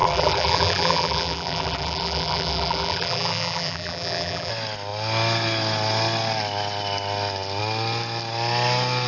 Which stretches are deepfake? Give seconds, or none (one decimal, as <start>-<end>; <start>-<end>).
0.0-4.5